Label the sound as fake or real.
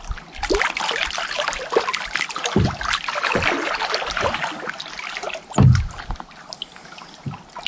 real